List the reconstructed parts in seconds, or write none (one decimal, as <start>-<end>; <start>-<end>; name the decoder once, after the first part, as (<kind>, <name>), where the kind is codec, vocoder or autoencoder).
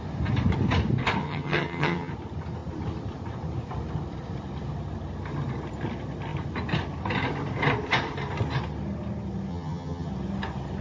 1.2-2.1 (vocoder, HiFi-GAN); 9.5-10.1